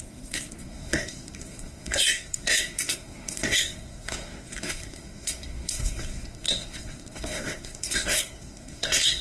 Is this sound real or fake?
fake